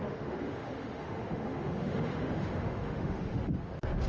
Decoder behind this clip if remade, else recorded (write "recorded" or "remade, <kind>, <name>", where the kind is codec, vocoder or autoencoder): remade, autoencoder, DAC-VAE